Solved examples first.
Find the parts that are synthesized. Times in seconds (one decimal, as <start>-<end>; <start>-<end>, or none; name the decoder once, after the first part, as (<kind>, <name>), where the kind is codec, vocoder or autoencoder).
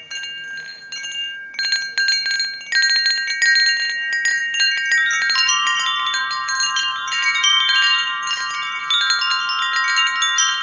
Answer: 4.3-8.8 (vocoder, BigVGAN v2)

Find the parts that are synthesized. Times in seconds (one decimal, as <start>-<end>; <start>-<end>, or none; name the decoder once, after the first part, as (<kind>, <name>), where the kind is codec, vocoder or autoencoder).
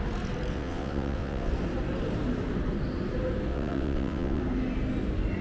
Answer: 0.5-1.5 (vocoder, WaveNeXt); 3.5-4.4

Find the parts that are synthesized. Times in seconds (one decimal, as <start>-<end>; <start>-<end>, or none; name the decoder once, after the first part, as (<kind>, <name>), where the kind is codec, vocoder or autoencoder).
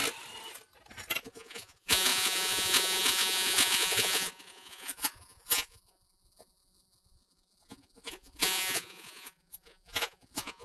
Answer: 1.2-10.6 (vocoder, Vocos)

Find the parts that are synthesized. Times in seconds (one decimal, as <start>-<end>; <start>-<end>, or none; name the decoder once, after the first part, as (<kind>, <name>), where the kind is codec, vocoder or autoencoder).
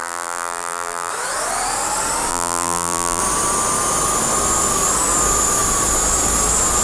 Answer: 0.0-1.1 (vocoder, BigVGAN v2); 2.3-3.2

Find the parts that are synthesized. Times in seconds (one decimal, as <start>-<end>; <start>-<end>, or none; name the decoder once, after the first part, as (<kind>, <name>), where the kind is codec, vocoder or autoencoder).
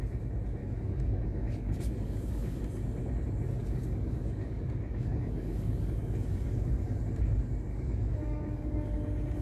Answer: 0.6-2.6 (codec, DAC); 3.6-7.0; 7.7-8.9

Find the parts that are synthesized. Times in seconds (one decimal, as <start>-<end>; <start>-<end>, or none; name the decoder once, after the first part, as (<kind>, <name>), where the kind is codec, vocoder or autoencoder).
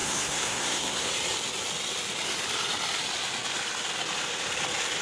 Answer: 0.0-1.1 (codec, SNAC)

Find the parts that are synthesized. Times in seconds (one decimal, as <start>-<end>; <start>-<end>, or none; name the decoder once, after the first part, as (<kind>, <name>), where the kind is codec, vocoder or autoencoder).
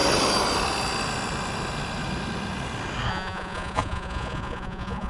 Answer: 3.1-5.1 (vocoder, Vocos)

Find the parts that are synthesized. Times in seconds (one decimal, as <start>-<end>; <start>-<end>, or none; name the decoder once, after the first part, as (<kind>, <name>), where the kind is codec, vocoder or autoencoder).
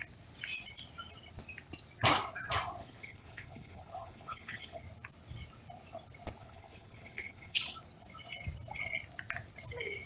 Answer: 2.8-4.8 (codec, HILCodec); 6.4-7.6